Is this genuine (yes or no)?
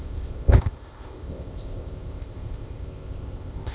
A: no